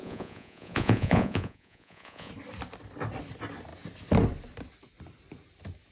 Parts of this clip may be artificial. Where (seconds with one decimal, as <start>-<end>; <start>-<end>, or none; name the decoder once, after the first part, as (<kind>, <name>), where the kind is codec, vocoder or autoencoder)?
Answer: 0.0-2.3 (vocoder, Vocos)